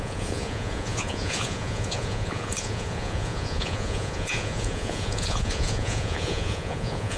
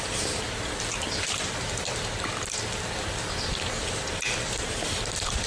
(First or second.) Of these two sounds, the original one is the second